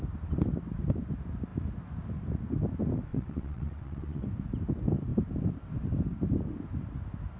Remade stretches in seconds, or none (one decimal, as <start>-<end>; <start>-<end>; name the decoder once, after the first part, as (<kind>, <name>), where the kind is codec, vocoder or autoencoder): 3.1-4.2 (vocoder, WaveNeXt)